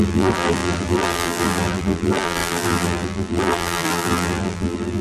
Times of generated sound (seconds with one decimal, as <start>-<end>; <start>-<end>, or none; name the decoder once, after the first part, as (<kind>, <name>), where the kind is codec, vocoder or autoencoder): 0.0-5.0 (vocoder, BigVGAN v2)